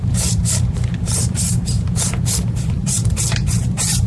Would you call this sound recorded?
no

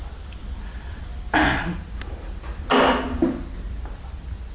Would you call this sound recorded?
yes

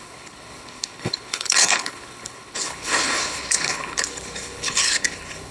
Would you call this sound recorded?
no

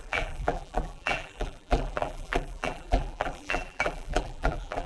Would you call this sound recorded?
no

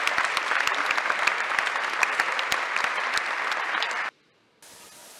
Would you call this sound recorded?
yes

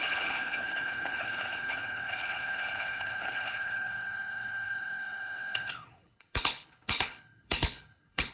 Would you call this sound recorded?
no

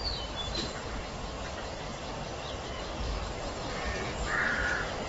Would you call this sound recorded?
no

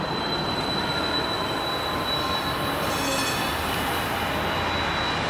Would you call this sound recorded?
yes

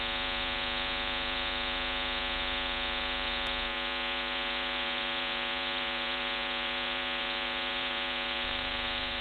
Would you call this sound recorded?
no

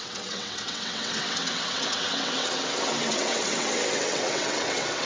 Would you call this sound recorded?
no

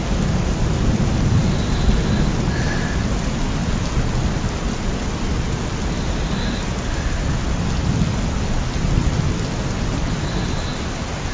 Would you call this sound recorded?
yes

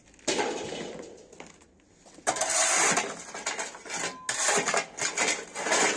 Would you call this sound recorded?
yes